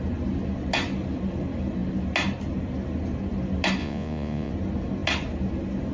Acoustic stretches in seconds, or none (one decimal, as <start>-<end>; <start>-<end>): 0.0-3.8; 4.5-5.9